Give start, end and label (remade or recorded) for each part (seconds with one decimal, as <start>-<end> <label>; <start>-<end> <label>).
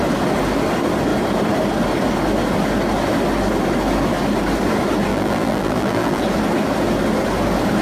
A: 0.0-5.1 recorded; 5.1-6.2 remade; 6.2-7.8 recorded